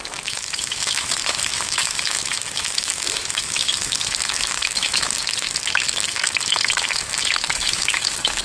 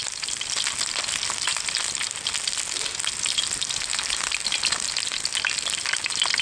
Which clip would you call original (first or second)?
second